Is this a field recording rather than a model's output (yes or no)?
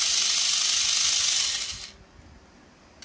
yes